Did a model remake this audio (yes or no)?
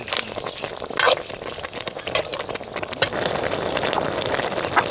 no